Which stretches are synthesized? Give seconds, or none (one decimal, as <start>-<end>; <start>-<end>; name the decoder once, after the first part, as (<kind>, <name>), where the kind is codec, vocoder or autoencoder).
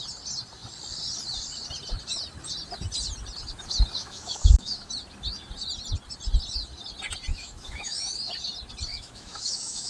4.0-4.9 (autoencoder, DAC-VAE); 7.3-8.3; 8.9-9.9